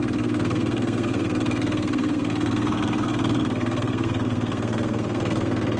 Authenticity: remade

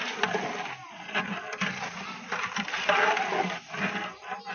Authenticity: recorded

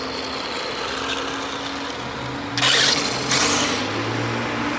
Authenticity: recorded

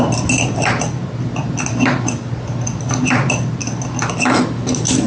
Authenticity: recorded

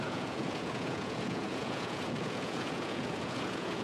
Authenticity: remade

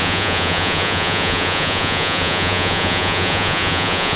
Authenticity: remade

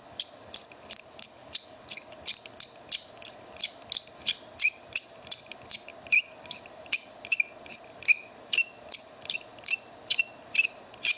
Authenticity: recorded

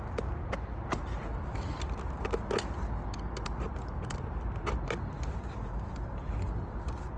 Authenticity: recorded